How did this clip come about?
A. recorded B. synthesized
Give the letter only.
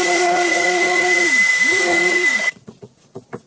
B